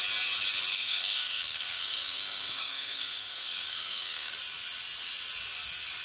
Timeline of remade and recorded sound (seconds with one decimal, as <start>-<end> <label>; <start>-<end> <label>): 0.0-0.7 recorded; 0.7-4.3 remade; 4.3-6.0 recorded